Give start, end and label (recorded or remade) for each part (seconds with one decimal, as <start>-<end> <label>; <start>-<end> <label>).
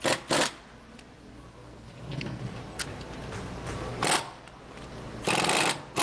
0.0-1.5 recorded; 1.5-2.4 remade; 2.4-6.0 recorded